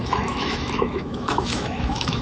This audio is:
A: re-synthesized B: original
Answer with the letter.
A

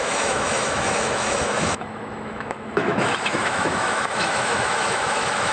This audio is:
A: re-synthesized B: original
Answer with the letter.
A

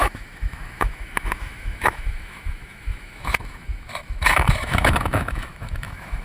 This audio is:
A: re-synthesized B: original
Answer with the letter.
A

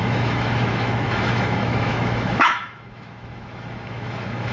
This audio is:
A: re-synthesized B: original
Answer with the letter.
A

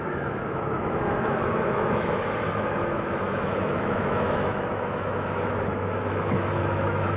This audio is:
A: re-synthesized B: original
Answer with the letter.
A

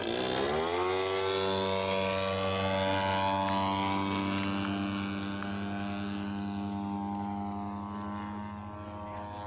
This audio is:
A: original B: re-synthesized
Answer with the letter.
A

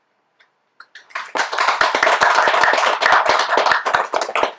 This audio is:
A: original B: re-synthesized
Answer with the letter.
A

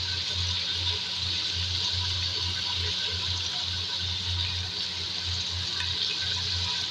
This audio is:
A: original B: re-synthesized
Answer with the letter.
A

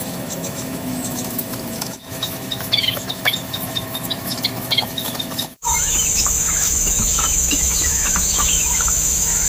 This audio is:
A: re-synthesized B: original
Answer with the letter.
A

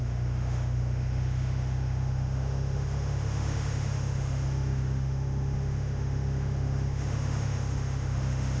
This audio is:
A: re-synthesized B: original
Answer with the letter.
A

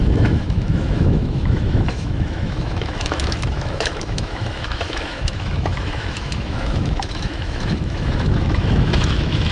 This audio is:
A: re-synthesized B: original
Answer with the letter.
A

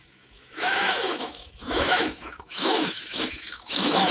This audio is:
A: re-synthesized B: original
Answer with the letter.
A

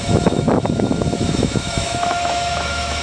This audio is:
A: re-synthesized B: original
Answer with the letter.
A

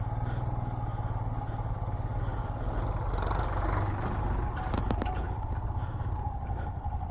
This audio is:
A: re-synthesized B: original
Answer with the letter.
B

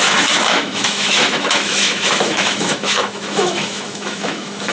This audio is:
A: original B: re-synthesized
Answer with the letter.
B